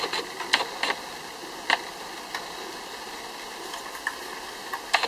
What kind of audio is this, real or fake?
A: real